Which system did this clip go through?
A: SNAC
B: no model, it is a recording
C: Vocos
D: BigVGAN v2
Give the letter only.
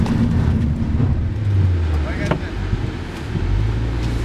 B